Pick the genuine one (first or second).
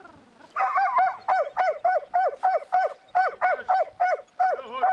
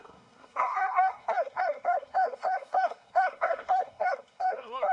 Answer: first